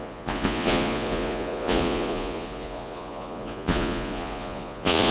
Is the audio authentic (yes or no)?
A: no